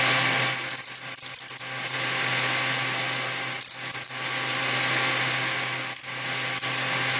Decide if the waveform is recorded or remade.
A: recorded